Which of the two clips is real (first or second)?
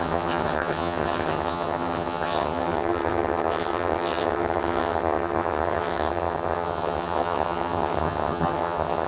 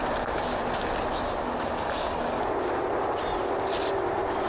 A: second